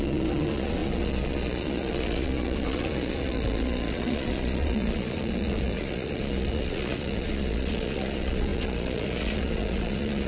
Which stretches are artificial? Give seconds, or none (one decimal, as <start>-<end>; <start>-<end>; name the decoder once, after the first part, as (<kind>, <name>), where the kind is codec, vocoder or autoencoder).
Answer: 0.0-10.3 (vocoder, Vocos)